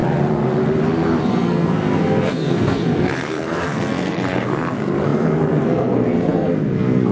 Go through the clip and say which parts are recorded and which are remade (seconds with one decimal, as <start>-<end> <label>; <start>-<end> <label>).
0.0-1.3 recorded; 1.3-7.1 remade